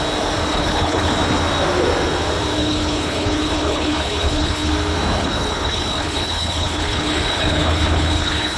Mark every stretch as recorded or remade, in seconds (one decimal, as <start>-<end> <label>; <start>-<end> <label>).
0.0-0.5 recorded; 0.5-1.1 remade; 1.1-2.6 recorded; 2.6-4.7 remade; 4.7-5.2 recorded; 5.2-8.6 remade

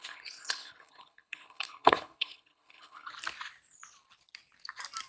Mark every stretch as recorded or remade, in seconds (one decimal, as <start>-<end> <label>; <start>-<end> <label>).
0.0-3.1 remade; 3.1-5.1 recorded